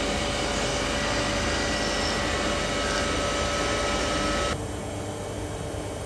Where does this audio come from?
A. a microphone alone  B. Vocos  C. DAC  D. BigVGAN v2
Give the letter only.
A